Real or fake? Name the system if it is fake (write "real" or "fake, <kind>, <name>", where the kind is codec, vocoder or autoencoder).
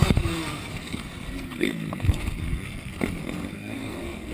fake, codec, SNAC